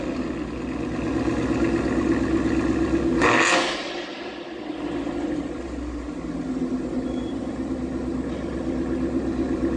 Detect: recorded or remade recorded